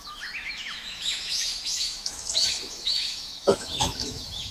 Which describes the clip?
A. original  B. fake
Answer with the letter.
B